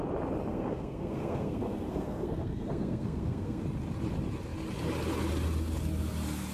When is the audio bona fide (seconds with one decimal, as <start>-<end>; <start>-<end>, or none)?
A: 0.0-0.5; 3.6-6.5